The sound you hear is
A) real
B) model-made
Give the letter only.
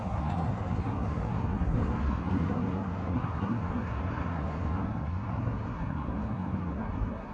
B